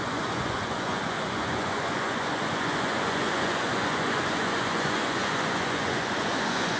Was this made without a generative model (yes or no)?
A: no